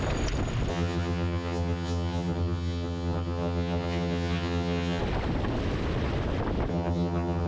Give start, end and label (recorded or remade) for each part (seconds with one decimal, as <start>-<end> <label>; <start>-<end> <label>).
0.0-0.7 recorded; 0.7-5.0 remade; 5.0-6.7 recorded; 6.7-7.5 remade